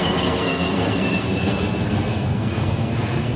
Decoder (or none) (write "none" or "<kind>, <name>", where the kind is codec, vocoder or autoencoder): codec, SNAC